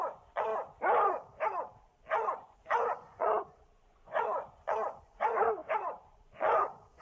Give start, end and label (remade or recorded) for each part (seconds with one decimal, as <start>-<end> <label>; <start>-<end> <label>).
0.0-0.5 remade; 0.5-2.1 recorded; 2.1-7.0 remade